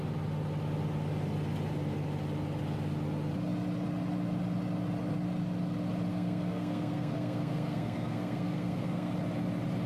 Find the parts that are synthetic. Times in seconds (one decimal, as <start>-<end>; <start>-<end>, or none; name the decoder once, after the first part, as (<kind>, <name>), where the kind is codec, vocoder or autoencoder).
6.1-9.1 (codec, SNAC)